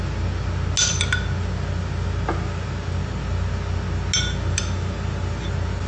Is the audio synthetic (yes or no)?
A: no